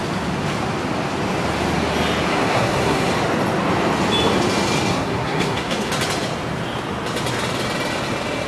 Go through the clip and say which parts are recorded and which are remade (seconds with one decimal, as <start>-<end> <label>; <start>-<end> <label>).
0.0-2.3 recorded; 2.3-3.1 remade; 3.1-4.9 recorded; 4.9-5.9 remade; 5.9-8.5 recorded